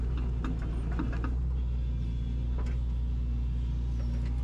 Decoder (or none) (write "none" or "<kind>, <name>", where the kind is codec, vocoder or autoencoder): none